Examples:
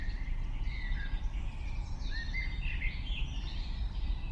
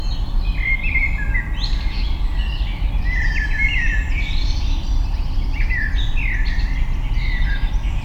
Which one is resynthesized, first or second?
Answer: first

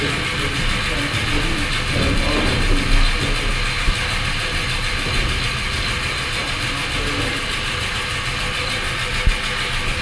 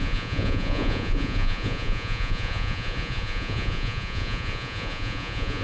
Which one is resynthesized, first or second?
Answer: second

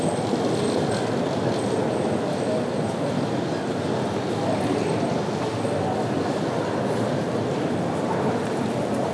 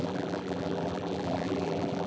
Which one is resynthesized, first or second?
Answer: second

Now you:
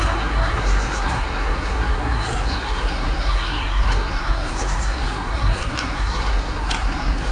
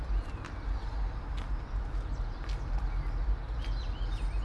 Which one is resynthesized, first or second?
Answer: first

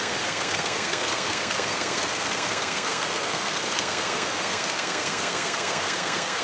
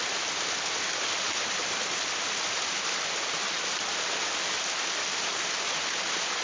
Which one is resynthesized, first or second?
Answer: first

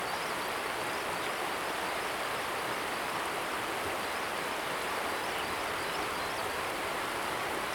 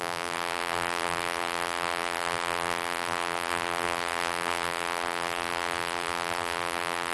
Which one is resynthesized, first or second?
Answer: second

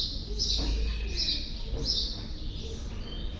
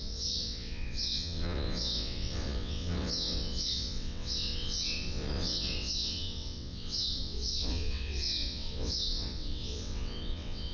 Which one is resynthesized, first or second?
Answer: second